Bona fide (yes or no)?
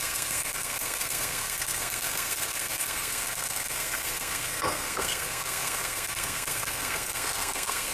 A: no